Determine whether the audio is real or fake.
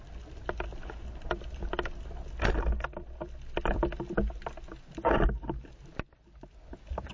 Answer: real